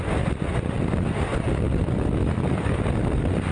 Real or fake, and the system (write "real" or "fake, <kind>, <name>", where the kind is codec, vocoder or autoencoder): real